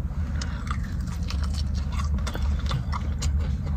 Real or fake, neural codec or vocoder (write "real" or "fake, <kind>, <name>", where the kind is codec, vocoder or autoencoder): real